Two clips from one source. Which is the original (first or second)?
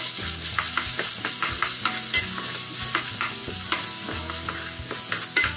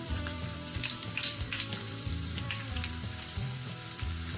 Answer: first